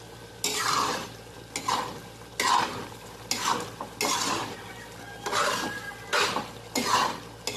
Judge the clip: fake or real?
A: real